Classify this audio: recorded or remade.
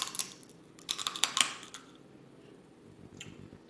recorded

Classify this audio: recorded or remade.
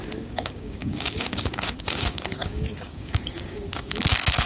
remade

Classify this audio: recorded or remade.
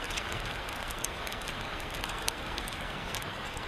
remade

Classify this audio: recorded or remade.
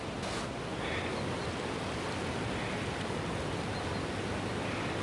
recorded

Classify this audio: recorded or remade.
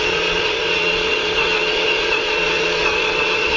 remade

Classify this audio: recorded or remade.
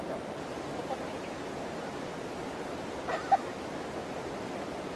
recorded